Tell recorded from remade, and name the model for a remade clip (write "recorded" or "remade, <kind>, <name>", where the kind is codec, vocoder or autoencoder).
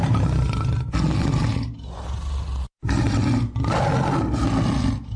recorded